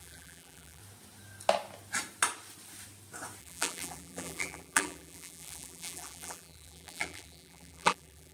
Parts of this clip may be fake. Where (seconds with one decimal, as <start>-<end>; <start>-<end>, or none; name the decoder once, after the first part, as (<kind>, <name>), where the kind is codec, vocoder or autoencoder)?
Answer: 0.0-0.8 (vocoder, BigVGAN v2); 3.4-8.3